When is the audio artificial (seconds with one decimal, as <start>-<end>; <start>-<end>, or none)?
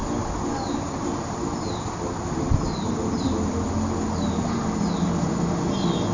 none